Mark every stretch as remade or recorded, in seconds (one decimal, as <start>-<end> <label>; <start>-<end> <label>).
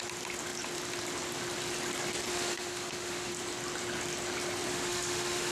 0.0-2.3 recorded; 2.3-3.3 remade; 3.3-4.7 recorded; 4.7-5.5 remade